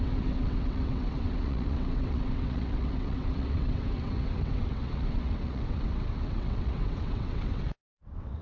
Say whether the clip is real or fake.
fake